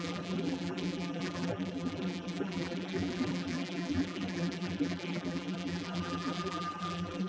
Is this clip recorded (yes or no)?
no